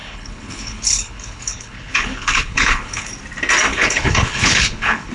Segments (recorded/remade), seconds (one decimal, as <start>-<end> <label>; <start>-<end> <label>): 0.0-3.1 remade; 3.1-3.7 recorded; 3.7-5.1 remade